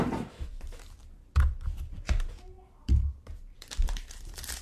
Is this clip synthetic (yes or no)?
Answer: yes